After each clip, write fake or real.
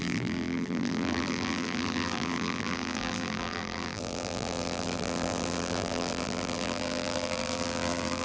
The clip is fake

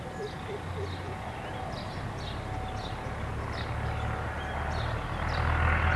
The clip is real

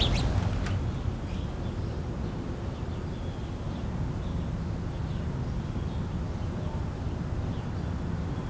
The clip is real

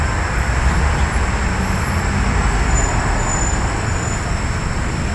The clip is real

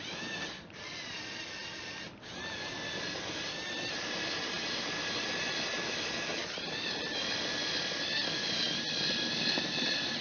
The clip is real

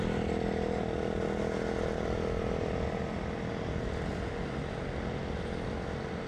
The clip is real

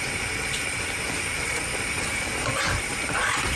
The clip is fake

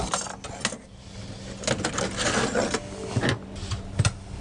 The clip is real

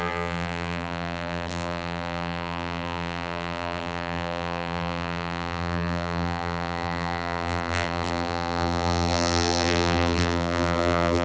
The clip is fake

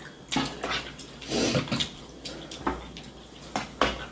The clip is real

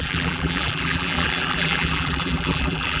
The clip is fake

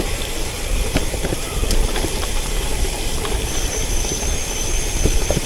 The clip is fake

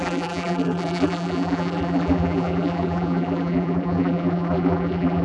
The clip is fake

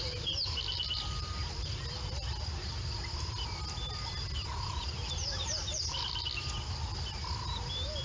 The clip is real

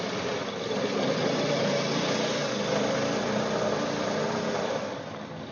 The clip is real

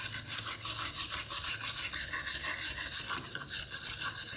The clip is real